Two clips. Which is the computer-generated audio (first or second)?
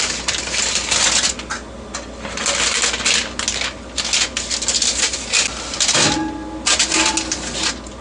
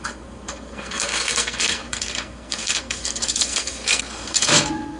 second